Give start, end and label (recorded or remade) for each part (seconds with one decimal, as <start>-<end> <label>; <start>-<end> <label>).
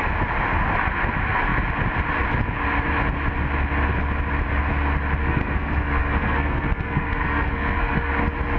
0.0-5.2 recorded; 5.2-8.1 remade; 8.1-8.6 recorded